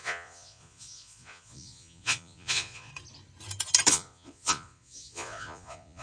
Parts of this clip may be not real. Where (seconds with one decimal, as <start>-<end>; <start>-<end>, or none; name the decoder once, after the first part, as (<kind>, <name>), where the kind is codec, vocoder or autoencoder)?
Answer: 0.0-2.9 (vocoder, Vocos); 3.9-6.0